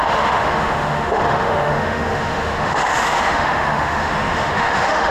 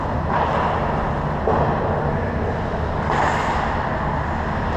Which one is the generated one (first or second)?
first